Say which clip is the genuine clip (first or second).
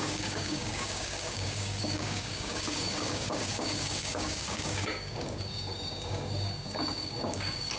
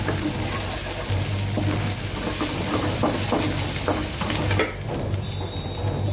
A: second